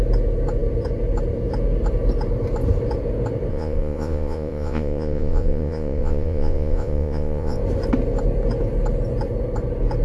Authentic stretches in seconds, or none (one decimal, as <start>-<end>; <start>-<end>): 0.0-3.5; 7.6-10.0